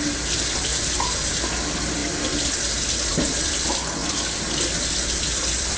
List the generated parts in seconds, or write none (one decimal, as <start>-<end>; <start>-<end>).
0.0-0.7; 1.3-5.8